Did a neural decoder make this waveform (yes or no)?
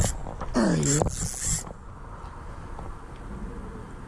no